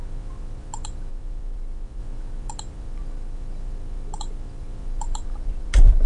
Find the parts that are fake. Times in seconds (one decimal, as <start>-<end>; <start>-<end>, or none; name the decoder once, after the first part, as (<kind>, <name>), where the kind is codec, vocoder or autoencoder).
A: 1.1-2.0 (vocoder, BigVGAN v2); 4.8-6.1